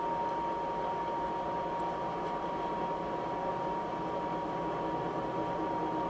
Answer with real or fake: real